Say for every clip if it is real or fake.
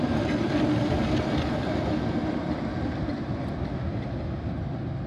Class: real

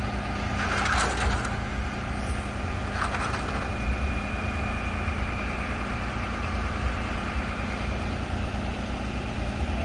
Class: real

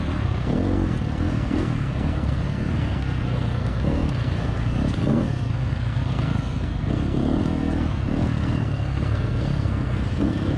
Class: fake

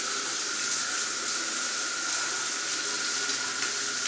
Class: real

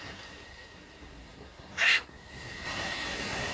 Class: fake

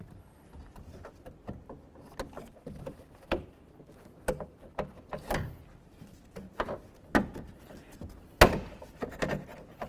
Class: real